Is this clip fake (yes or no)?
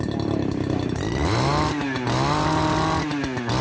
no